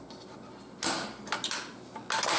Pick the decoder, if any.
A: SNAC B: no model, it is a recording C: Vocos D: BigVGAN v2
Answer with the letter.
B